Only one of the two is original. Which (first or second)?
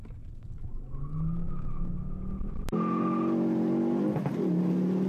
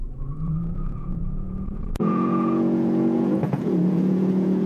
first